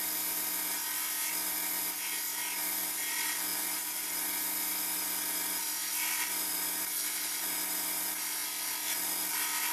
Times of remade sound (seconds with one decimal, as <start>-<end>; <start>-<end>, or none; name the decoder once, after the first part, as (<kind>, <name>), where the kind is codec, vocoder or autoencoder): none

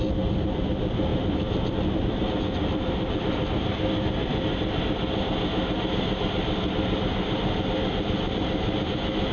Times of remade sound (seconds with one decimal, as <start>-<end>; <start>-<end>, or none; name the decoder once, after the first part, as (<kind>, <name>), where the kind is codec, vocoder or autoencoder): none

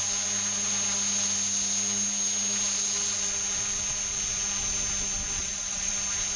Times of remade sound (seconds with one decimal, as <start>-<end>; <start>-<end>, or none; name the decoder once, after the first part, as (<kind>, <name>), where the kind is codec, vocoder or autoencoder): 5.4-5.9 (vocoder, Vocos)

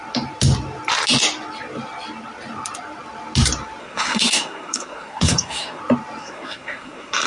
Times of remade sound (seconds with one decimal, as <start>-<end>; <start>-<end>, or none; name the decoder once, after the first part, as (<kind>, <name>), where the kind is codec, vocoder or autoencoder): 3.8-5.8 (codec, SNAC); 6.2-7.3

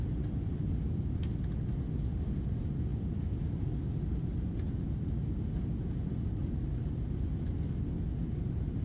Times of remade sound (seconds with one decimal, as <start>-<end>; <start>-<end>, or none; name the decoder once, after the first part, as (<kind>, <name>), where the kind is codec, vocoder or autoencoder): none

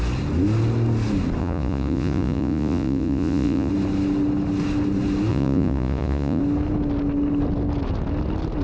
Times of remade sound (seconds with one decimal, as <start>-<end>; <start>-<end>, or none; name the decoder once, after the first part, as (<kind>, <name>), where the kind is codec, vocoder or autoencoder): 1.4-3.7 (vocoder, Vocos); 5.3-6.4

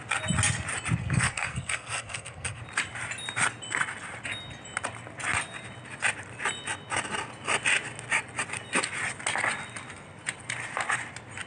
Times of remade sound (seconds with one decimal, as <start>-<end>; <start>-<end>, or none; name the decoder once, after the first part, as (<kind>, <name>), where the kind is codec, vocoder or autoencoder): 1.0-2.6 (codec, SNAC)